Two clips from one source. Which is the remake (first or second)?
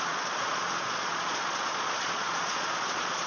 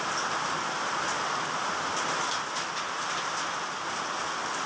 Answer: first